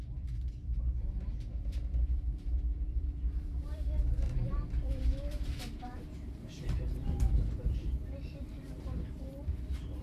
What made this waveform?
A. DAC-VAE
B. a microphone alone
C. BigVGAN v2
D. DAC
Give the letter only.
C